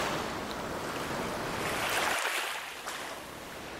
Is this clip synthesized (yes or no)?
no